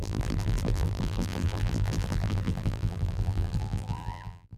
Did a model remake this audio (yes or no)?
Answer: yes